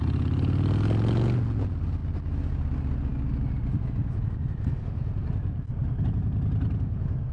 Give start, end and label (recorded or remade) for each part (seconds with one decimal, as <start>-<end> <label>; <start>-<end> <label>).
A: 0.0-7.3 recorded